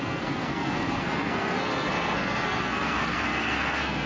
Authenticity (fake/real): fake